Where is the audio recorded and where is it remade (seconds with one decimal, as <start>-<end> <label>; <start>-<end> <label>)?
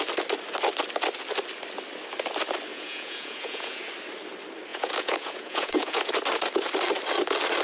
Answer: 0.0-2.7 recorded; 2.7-3.8 remade; 3.8-4.7 recorded; 4.7-6.1 remade; 6.1-7.6 recorded